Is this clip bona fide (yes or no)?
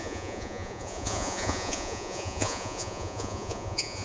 no